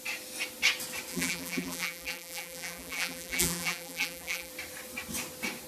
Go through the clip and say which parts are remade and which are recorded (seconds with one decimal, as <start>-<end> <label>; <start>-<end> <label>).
0.0-1.1 recorded; 1.1-4.5 remade; 4.5-5.7 recorded

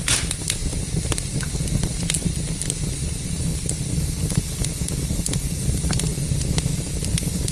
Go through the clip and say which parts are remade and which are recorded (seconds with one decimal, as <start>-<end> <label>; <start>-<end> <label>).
0.0-0.6 remade; 0.6-3.3 recorded; 3.3-6.1 remade; 6.1-7.1 recorded; 7.1-7.5 remade

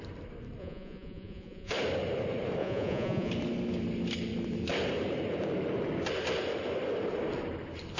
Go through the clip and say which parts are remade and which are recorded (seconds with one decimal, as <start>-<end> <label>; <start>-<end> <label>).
0.0-0.6 recorded; 0.6-1.7 remade; 1.7-2.6 recorded; 2.6-3.3 remade; 3.3-8.0 recorded